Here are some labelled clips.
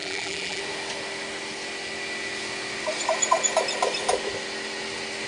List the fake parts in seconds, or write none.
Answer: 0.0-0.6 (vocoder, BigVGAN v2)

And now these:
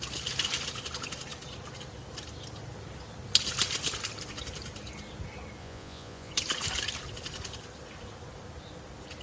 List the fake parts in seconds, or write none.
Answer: 5.6-6.3 (vocoder, Vocos)

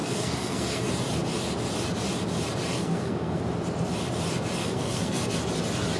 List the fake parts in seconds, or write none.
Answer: 0.0-0.9 (codec, SNAC); 2.7-3.4; 4.6-5.2

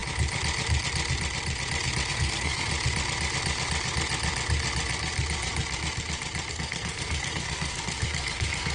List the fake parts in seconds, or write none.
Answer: 2.1-2.7 (codec, SNAC); 6.5-8.7